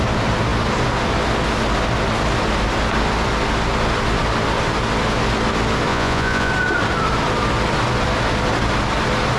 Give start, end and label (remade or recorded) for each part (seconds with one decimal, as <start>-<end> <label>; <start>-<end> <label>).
0.0-5.9 recorded; 5.9-6.5 remade; 6.5-9.4 recorded

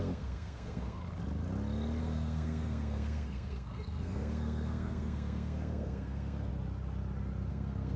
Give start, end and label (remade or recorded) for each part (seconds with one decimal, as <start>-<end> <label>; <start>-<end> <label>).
0.0-1.0 remade; 1.0-2.0 recorded; 2.0-6.5 remade; 6.5-7.5 recorded; 7.5-8.0 remade